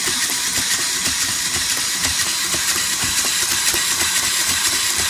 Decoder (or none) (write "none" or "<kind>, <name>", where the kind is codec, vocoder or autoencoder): vocoder, BigVGAN v2